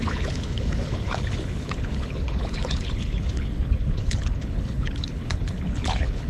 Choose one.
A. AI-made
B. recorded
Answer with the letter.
A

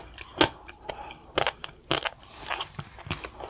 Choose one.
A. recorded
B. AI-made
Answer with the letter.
A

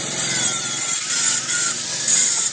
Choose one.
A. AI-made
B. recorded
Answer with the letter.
A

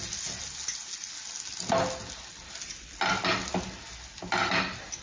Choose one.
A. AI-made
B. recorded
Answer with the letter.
B